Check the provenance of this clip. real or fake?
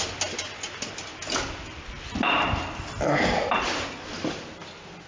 real